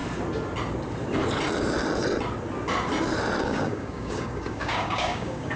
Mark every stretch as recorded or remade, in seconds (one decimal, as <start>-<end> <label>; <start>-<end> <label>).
0.0-3.4 recorded; 3.4-5.6 remade